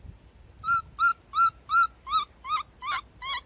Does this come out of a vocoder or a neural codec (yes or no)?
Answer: no